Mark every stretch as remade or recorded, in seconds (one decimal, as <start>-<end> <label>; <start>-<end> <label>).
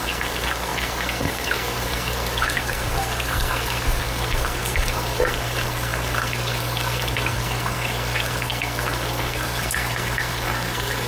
0.0-11.1 remade